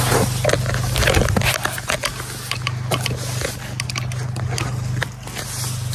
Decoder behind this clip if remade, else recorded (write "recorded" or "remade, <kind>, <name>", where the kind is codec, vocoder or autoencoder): recorded